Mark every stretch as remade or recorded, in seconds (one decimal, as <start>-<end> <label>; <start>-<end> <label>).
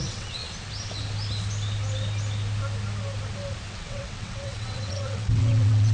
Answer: 0.0-0.4 remade; 0.4-3.7 recorded; 3.7-5.9 remade